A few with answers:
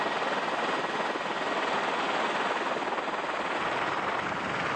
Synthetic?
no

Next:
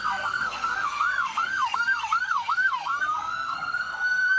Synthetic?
yes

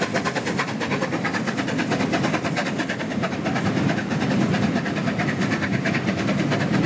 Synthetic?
no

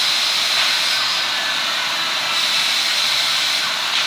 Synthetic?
no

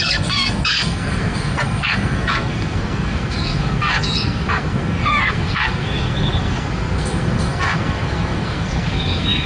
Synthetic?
yes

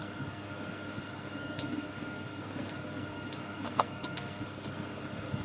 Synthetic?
yes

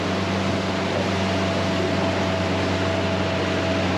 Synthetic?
no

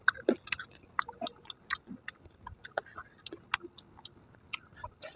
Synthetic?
no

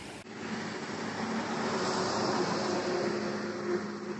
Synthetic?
no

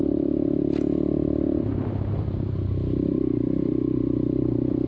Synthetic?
no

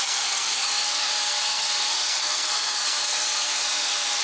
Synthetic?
yes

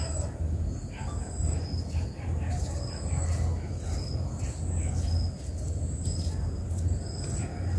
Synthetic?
no